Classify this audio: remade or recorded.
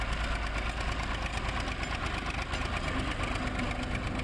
recorded